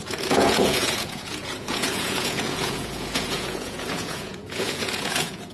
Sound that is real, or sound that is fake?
fake